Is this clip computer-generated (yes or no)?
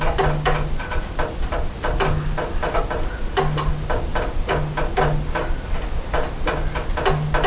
no